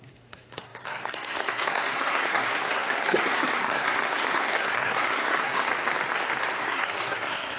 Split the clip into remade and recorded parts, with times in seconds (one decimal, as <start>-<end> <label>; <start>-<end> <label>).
0.0-5.7 remade; 5.7-6.6 recorded; 6.6-7.6 remade